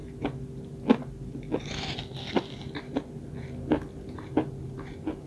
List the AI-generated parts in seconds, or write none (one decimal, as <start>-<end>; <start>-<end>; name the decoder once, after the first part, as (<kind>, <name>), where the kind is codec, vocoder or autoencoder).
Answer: none